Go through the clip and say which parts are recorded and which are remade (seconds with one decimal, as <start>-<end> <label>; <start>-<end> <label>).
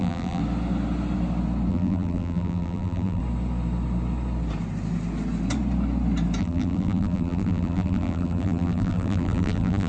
0.0-0.4 remade; 0.4-1.7 recorded; 1.7-3.2 remade; 3.2-6.4 recorded; 6.4-9.9 remade